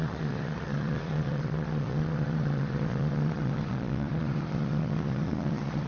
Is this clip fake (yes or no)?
yes